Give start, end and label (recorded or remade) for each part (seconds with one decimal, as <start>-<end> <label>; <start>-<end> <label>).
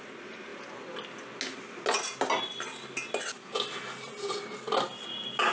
0.0-5.5 recorded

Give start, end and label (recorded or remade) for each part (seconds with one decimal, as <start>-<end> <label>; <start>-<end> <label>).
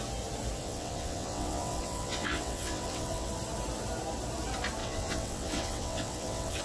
0.0-0.6 recorded; 0.6-3.3 remade; 3.3-4.8 recorded; 4.8-6.6 remade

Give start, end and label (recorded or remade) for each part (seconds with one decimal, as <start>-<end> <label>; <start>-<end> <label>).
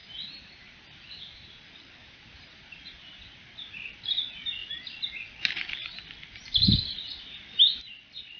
0.0-1.6 remade; 1.6-2.0 recorded; 2.0-4.0 remade; 4.0-8.4 recorded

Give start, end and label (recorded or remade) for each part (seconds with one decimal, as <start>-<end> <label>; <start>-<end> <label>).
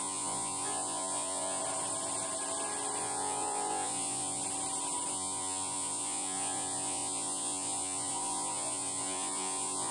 0.0-1.6 remade; 1.6-3.0 recorded; 3.0-4.4 remade; 4.4-5.1 recorded; 5.1-9.9 remade